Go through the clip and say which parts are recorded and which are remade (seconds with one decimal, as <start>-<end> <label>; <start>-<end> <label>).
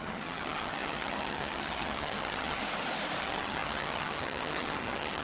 0.0-2.6 remade; 2.6-3.2 recorded; 3.2-5.2 remade